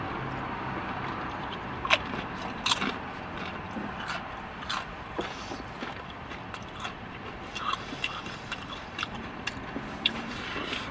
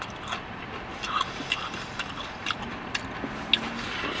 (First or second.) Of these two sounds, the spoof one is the first